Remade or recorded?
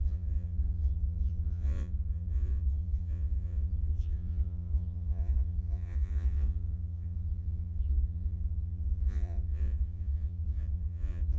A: remade